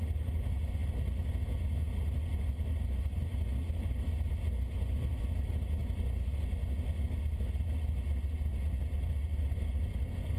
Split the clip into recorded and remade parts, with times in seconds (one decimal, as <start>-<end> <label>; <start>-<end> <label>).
0.0-9.3 recorded; 9.3-10.4 remade

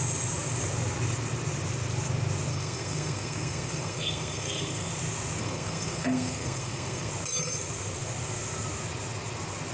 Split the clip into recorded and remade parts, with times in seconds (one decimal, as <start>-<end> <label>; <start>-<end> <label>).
0.0-2.5 recorded; 2.5-4.9 remade; 4.9-5.4 recorded; 5.4-7.1 remade; 7.1-9.7 recorded

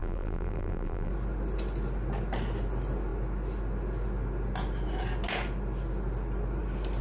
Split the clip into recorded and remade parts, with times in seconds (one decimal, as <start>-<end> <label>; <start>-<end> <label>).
0.0-1.1 remade; 1.1-7.0 recorded

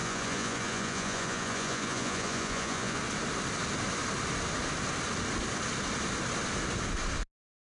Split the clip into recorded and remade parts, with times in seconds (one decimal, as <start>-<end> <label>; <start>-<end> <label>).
0.0-3.0 remade; 3.0-7.6 recorded

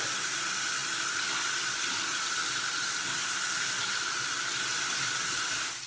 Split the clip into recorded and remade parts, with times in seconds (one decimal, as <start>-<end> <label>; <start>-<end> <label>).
0.0-5.9 recorded